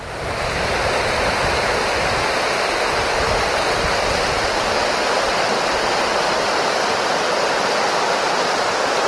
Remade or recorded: recorded